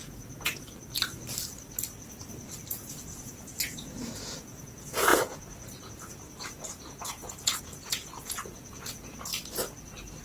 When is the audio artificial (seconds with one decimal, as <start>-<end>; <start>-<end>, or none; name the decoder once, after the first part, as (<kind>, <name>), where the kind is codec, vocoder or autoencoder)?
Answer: 0.0-0.8 (vocoder, Vocos); 2.7-9.3